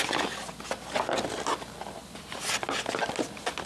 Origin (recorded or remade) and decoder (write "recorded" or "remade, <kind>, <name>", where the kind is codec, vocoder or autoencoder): recorded